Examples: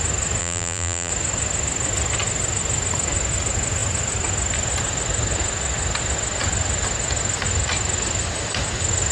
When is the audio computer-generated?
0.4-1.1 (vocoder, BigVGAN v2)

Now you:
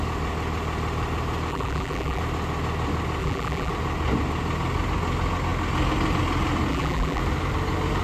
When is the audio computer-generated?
1.5-2.2 (vocoder, BigVGAN v2); 3.2-3.7; 6.7-7.2

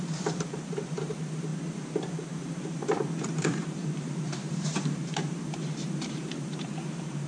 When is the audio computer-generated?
0.0-1.5 (vocoder, BigVGAN v2); 2.6-7.3